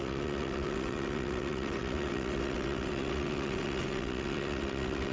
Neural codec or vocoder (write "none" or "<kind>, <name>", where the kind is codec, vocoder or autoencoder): vocoder, WaveNeXt